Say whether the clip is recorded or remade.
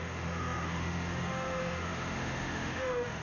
remade